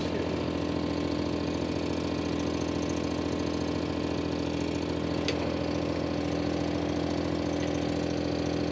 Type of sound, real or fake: real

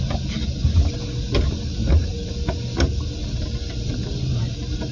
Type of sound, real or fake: real